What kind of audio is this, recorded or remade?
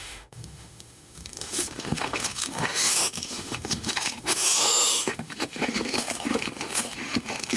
remade